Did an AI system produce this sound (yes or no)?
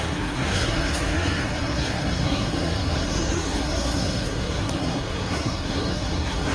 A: yes